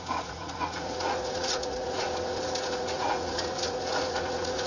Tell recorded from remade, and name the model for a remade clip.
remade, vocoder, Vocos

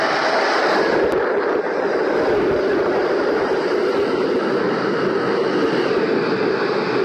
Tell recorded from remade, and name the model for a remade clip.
recorded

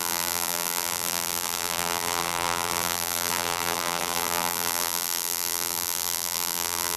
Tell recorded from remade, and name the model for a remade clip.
remade, vocoder, BigVGAN v2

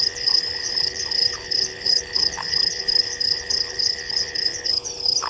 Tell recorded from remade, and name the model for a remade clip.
remade, codec, HILCodec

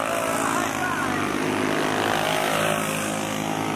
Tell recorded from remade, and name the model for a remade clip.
recorded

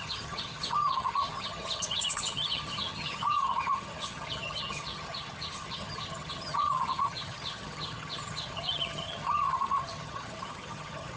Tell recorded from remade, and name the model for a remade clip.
remade, vocoder, HiFi-GAN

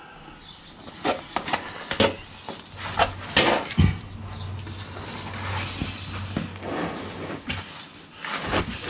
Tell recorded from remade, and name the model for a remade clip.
recorded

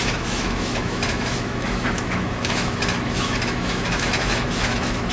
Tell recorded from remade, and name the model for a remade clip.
remade, autoencoder, DAC-VAE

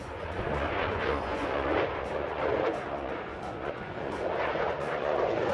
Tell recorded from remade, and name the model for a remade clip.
remade, vocoder, Vocos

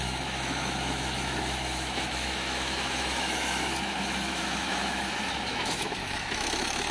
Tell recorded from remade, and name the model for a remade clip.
remade, autoencoder, DAC-VAE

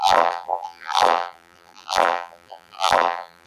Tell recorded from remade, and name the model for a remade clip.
remade, vocoder, BigVGAN v2